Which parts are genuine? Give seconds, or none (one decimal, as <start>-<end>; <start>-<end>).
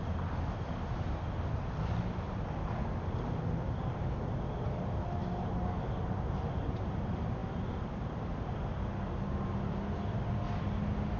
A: 0.0-11.2